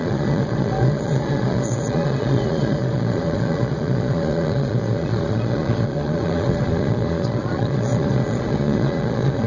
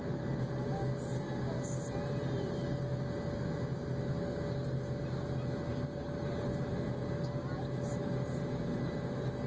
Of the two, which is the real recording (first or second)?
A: second